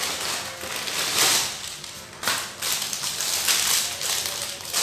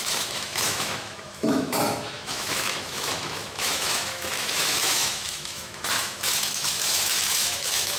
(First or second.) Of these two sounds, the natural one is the first